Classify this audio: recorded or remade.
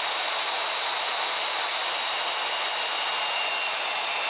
recorded